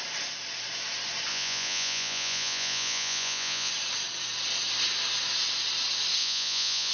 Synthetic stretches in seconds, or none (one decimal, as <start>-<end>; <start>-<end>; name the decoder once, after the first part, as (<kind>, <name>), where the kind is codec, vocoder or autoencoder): 1.3-3.7 (vocoder, Vocos); 6.2-6.9

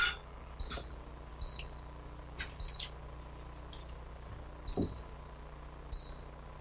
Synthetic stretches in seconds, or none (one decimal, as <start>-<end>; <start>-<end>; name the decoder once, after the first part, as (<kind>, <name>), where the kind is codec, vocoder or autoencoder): none

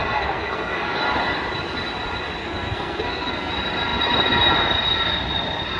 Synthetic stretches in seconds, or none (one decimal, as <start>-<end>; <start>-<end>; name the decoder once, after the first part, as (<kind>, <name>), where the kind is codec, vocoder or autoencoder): 0.0-1.0 (codec, SNAC); 2.4-3.5

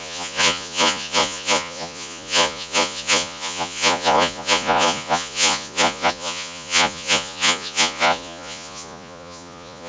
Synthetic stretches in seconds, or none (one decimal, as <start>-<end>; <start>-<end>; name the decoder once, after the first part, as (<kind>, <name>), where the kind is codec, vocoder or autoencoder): 0.0-9.9 (vocoder, Vocos)

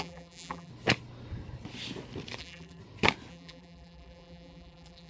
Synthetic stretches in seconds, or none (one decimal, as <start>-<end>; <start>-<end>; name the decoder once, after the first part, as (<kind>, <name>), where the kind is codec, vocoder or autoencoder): 0.0-0.7 (vocoder, BigVGAN v2); 2.4-2.8; 3.3-5.1

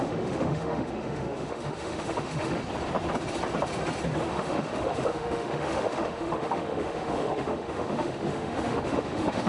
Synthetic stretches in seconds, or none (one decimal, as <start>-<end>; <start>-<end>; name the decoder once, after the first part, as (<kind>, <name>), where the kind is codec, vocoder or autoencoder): 0.0-2.6 (autoencoder, DAC-VAE); 4.3-9.5

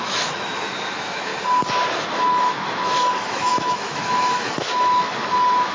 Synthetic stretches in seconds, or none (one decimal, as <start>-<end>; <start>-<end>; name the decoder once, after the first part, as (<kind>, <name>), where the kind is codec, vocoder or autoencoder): 0.0-1.3 (autoencoder, DAC-VAE); 2.1-5.7